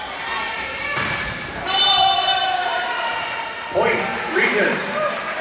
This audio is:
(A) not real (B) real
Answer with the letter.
A